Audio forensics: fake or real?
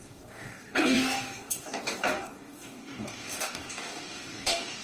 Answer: fake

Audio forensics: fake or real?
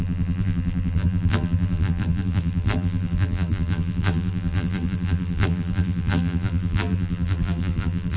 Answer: fake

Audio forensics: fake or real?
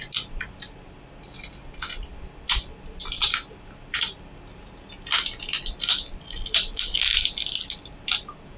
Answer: real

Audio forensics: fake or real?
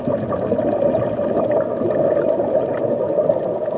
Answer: real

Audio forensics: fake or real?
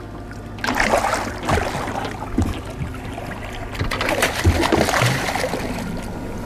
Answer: real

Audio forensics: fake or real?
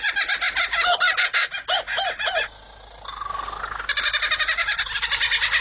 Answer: real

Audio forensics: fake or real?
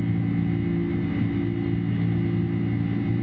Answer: real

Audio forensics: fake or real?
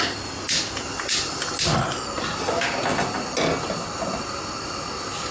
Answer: real